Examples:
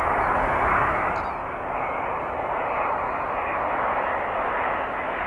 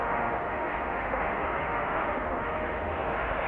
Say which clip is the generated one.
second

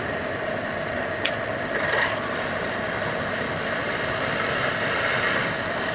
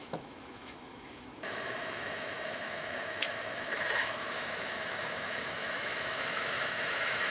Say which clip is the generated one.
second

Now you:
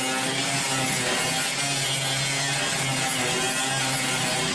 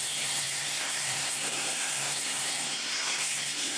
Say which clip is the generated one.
second